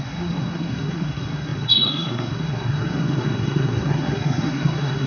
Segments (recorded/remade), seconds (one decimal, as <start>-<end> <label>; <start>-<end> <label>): 0.0-5.1 remade